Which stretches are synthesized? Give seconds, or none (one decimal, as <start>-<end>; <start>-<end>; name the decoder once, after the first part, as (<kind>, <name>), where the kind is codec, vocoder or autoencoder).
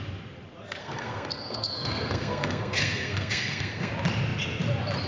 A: 0.8-3.9 (codec, SNAC)